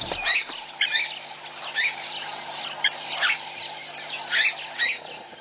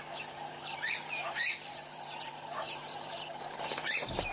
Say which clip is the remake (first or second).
second